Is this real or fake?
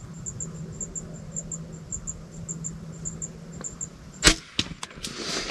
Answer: real